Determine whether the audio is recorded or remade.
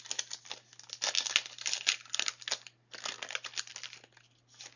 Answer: recorded